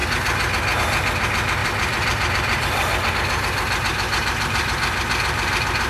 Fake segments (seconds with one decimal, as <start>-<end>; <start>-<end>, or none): 1.6-3.1